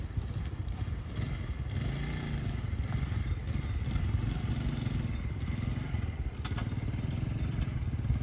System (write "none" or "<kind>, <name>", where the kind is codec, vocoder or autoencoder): none